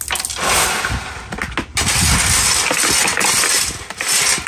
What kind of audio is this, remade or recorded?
recorded